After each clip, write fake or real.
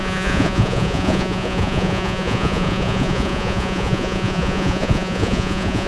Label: fake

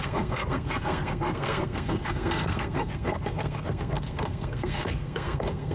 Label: fake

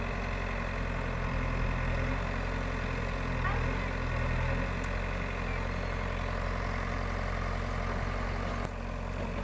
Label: real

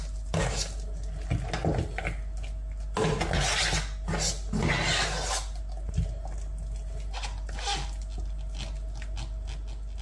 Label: real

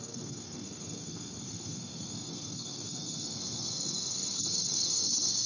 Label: fake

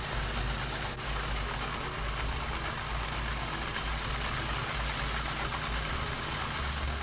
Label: real